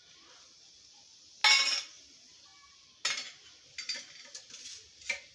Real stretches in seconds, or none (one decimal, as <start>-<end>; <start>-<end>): 0.0-5.3